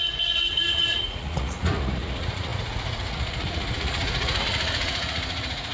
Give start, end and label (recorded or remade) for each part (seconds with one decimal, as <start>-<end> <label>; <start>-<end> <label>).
0.0-5.7 remade